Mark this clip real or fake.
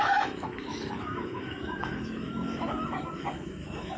fake